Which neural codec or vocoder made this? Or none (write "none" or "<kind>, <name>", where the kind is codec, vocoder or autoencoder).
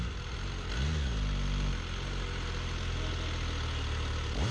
none